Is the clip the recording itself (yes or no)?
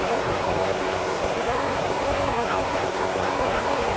no